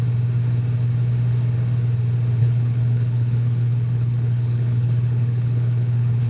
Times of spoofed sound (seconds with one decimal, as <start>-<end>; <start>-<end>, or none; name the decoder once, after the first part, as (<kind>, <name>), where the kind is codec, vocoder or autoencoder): 2.4-6.3 (codec, HILCodec)